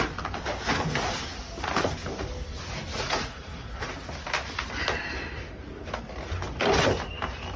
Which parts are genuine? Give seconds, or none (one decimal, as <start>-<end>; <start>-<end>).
0.0-2.9; 3.9-7.6